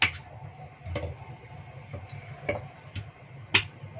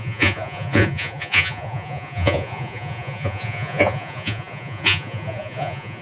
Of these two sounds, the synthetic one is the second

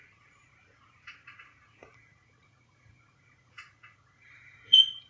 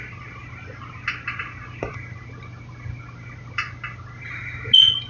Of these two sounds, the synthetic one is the first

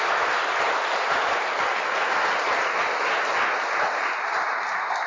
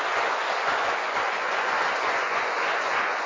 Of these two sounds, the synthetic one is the second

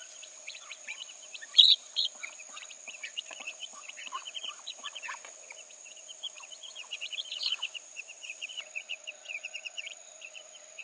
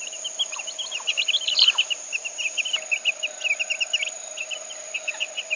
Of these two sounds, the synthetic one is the first